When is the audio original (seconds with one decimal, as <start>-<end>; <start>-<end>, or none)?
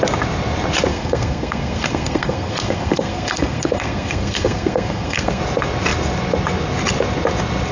0.0-0.9; 5.4-7.7